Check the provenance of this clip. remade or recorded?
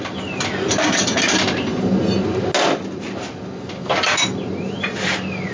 recorded